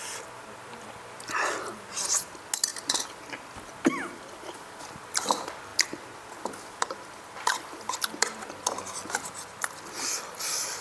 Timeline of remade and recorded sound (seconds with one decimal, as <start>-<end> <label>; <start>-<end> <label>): 0.0-10.8 recorded